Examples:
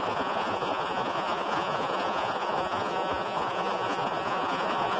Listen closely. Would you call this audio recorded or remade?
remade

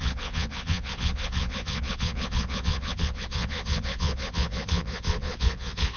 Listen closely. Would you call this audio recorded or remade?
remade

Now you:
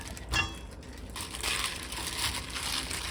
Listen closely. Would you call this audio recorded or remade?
recorded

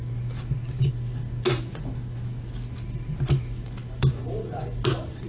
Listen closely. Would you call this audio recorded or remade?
recorded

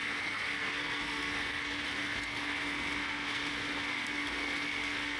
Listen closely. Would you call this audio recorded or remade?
remade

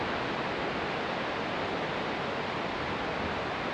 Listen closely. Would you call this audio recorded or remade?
recorded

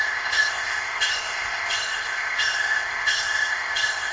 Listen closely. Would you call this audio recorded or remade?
remade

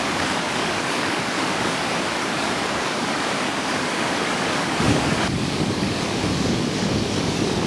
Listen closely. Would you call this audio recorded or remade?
remade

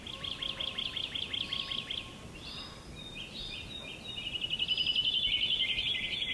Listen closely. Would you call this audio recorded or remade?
recorded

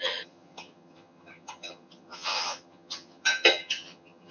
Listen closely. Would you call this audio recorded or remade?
remade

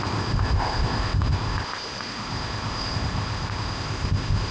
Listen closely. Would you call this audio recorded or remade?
remade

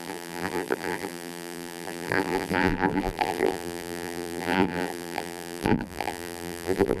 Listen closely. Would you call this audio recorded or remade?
remade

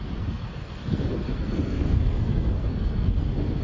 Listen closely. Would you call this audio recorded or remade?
remade